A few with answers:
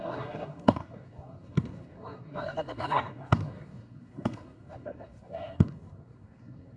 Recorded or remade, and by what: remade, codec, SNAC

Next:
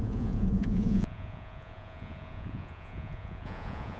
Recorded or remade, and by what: remade, vocoder, Vocos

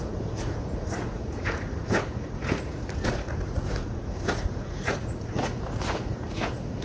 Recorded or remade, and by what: remade, vocoder, Vocos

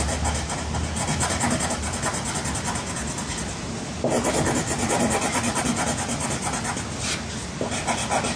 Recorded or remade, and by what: recorded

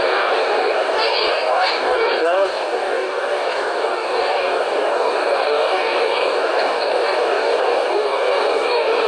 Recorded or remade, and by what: remade, codec, DAC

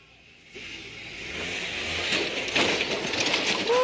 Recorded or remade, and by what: recorded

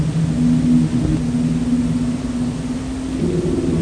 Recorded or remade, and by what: recorded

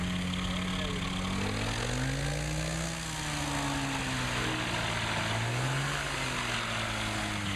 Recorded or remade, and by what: recorded